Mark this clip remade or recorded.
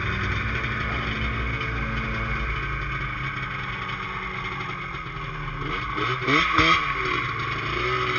recorded